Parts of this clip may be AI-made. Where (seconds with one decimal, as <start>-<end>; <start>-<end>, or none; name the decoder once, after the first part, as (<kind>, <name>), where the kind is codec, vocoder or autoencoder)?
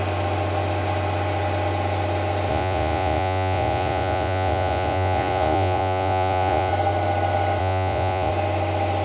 2.5-6.7 (vocoder, Vocos); 7.6-8.3